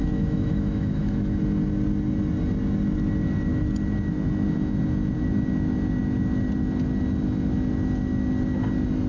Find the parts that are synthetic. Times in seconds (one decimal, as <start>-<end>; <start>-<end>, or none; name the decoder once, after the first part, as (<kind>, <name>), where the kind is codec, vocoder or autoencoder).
0.0-1.4 (autoencoder, DAC-VAE)